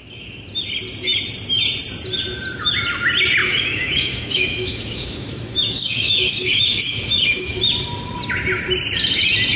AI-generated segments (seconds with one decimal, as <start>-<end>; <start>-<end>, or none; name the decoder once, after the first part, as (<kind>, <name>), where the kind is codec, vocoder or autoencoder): 3.4-7.6 (autoencoder, DAC-VAE)